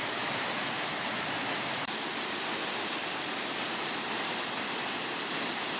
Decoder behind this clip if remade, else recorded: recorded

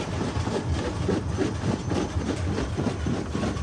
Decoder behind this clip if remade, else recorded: recorded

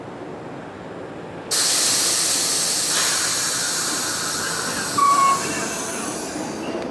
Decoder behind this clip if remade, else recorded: recorded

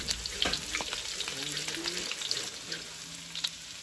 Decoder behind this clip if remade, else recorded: recorded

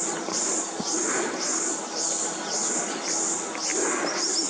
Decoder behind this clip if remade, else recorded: recorded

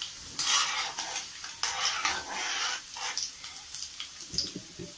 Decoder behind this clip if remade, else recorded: recorded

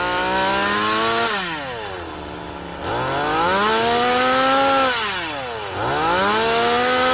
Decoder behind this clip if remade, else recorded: recorded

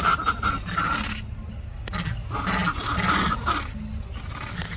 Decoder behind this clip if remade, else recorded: recorded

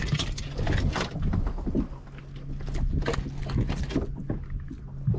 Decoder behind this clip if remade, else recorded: recorded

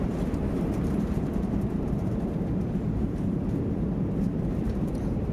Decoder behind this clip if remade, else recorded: remade, vocoder, BigVGAN v2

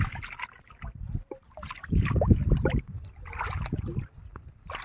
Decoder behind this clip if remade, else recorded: recorded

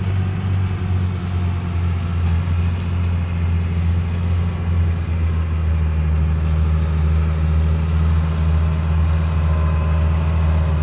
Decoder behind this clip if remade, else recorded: recorded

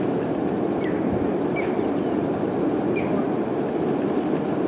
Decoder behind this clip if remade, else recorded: recorded